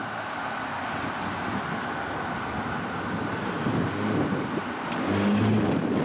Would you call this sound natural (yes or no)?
yes